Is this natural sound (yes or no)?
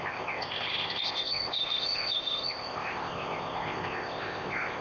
no